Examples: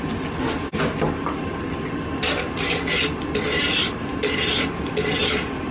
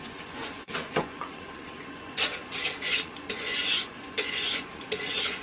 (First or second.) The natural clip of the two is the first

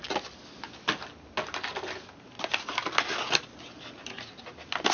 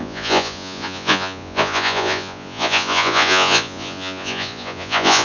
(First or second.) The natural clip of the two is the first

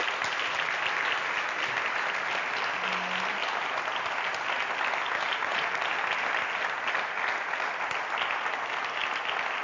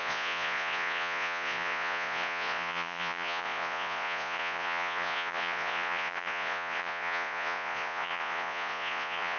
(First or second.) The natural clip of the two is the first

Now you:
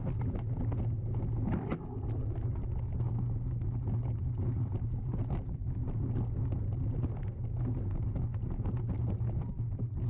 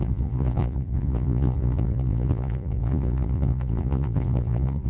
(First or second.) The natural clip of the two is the first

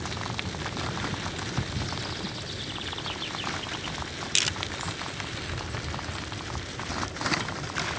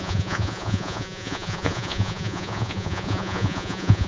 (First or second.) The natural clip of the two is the first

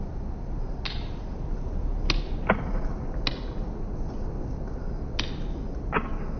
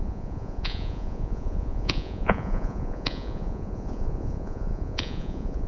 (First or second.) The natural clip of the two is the first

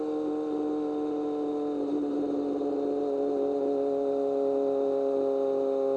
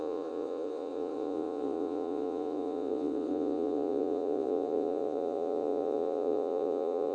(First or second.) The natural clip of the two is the first